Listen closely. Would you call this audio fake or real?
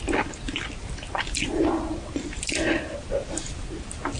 real